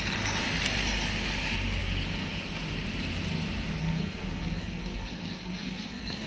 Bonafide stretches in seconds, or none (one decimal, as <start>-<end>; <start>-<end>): 0.0-3.8